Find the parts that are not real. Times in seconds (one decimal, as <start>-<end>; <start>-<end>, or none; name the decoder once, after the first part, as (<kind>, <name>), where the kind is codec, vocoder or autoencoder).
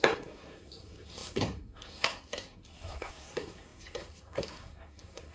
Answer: 0.0-5.3 (codec, SNAC)